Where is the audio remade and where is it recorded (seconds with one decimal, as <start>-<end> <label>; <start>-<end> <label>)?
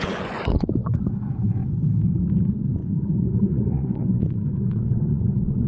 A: 0.0-1.6 remade; 1.6-2.4 recorded; 2.4-5.7 remade